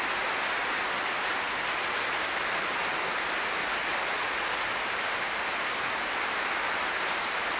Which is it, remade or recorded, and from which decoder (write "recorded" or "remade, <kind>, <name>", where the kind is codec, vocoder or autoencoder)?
recorded